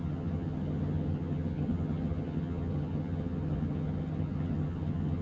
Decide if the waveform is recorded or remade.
remade